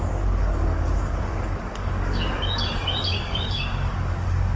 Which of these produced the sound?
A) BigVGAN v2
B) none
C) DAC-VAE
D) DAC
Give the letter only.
D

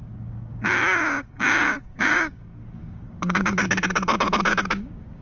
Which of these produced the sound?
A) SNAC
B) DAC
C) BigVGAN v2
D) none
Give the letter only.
B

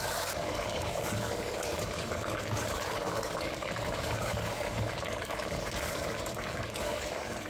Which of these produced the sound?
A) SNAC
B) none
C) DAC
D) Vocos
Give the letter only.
C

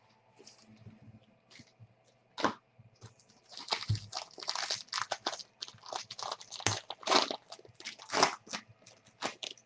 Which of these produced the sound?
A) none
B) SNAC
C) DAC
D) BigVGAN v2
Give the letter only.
A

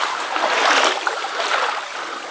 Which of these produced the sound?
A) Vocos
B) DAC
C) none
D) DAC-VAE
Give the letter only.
C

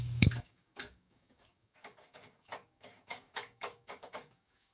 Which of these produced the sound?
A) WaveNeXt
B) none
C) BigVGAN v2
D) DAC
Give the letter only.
D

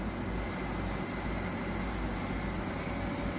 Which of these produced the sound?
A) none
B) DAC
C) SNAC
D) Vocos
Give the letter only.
A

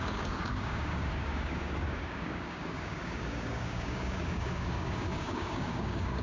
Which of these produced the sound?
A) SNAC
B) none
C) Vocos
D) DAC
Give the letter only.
D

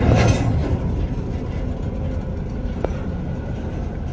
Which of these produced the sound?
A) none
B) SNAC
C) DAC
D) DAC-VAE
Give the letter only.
A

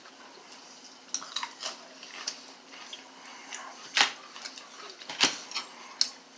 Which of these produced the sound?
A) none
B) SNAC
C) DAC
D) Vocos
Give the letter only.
A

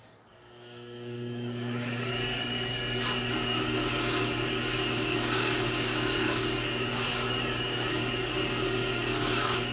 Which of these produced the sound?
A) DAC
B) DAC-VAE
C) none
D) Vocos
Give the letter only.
A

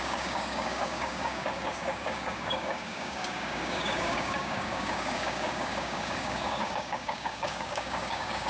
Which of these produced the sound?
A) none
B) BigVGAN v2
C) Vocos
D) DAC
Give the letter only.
D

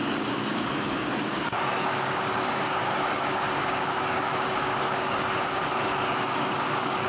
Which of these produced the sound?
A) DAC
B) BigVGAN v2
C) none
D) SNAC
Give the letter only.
A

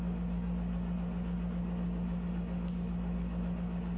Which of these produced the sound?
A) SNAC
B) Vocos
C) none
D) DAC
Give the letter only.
C